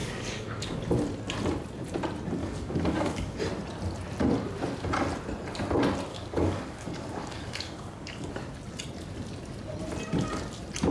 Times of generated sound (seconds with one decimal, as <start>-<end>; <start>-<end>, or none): 0.0-0.8; 2.4-3.4; 6.1-8.3